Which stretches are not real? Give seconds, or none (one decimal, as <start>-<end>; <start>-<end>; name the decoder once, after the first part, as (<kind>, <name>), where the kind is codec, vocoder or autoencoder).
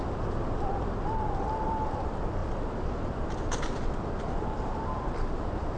none